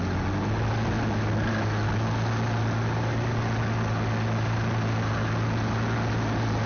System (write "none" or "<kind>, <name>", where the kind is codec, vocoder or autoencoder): none